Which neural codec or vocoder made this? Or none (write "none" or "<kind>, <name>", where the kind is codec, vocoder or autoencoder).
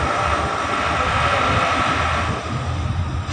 none